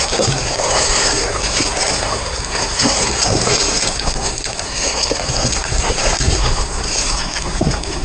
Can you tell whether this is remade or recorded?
remade